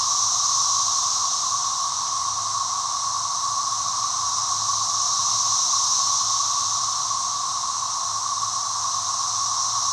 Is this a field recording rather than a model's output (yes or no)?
yes